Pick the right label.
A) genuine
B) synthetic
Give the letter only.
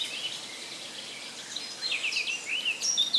A